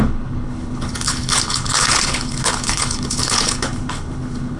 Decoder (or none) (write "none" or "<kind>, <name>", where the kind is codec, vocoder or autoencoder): codec, HILCodec